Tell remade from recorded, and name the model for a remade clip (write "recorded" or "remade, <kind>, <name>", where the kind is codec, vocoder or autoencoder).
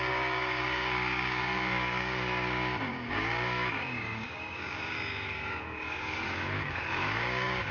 remade, codec, DAC